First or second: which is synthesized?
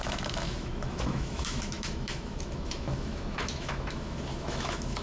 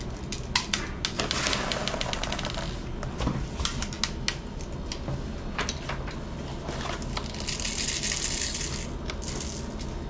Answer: first